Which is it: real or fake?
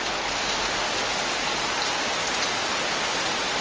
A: real